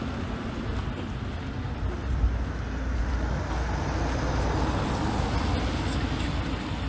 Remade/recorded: recorded